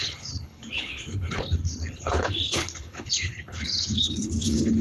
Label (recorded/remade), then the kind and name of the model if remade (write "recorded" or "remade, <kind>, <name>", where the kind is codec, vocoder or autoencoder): remade, codec, HILCodec